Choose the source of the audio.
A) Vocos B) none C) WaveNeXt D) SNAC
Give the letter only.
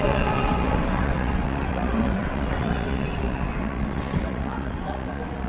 C